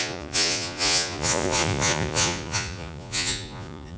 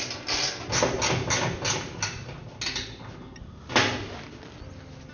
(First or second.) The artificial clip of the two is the first